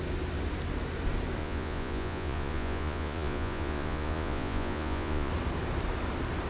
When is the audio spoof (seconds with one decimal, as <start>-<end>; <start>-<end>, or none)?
1.4-5.3